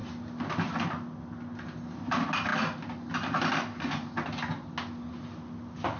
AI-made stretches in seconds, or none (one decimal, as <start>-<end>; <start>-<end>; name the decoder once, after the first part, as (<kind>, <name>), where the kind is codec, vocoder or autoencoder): none